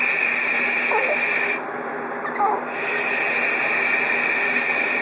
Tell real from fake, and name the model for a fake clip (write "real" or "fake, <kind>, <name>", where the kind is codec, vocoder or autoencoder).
real